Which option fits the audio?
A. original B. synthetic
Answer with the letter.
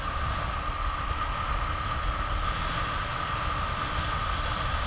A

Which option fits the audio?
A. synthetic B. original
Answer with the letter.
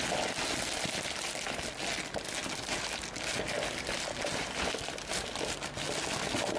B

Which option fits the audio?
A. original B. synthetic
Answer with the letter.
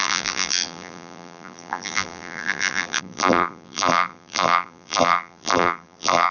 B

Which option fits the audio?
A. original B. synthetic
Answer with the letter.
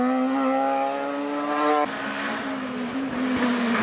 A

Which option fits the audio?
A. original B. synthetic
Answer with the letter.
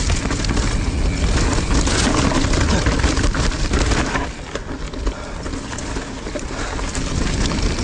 A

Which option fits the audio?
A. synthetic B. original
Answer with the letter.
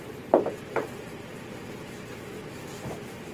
B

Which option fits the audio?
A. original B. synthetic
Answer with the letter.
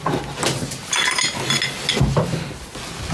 A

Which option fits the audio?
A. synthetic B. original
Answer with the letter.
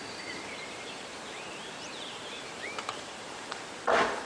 A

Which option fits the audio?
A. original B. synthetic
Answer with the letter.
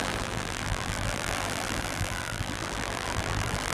B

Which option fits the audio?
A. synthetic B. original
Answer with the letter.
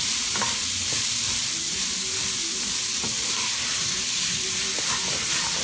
A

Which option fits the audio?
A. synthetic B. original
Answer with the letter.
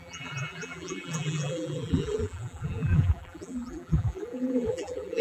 A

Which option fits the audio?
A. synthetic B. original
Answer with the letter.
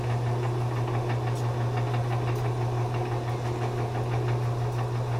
B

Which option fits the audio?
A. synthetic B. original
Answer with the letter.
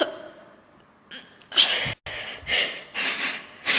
B